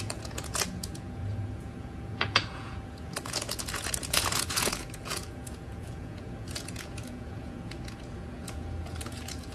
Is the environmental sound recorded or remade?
remade